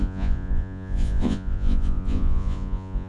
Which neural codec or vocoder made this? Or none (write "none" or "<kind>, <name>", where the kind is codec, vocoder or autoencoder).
vocoder, Vocos